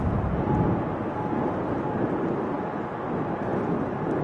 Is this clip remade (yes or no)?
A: no